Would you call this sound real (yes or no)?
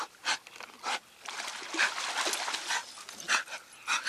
yes